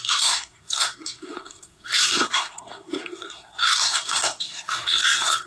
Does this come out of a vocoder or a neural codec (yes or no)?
yes